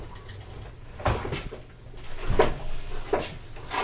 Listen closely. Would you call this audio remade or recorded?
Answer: recorded